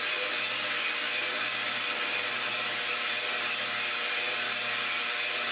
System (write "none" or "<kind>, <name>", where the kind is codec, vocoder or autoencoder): none